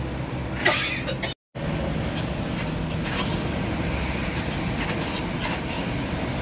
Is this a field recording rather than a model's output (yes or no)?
yes